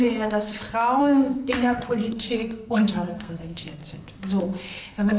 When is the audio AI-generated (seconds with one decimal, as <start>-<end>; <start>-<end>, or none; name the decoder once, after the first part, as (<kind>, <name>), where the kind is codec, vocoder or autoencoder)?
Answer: 0.0-0.5 (codec, SNAC); 1.0-3.8; 4.4-5.2

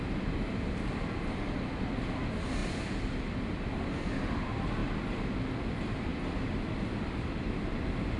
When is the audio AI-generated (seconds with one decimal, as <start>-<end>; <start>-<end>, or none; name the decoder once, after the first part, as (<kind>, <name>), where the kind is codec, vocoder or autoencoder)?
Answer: none

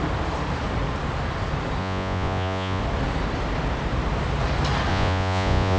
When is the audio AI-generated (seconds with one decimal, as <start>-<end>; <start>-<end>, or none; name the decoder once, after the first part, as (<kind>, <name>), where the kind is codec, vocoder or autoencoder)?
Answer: 1.8-2.8 (vocoder, Vocos); 4.9-5.8

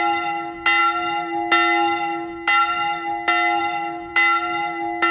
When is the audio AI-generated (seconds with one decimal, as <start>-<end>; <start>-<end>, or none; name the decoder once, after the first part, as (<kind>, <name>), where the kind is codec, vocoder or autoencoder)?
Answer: none

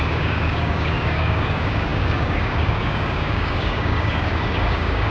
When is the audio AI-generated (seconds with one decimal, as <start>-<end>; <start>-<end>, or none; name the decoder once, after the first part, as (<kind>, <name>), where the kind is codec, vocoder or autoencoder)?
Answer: 0.0-5.1 (codec, DAC)

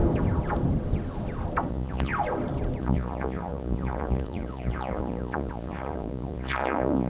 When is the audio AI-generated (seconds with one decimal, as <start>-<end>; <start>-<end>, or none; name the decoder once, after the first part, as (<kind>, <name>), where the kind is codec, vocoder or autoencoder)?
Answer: 1.7-2.1 (vocoder, Vocos); 2.8-7.1

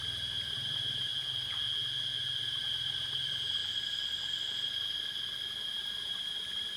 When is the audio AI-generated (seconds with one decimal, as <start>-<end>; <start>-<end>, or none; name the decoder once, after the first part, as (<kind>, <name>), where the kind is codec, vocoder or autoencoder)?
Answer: 0.0-1.1 (vocoder, BigVGAN v2); 2.4-3.6; 5.6-6.8